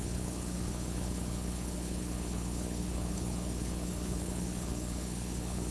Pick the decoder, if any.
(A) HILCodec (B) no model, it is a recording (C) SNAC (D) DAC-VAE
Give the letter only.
A